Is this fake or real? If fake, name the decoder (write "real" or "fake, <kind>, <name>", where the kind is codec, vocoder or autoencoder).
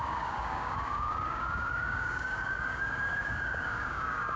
fake, codec, DAC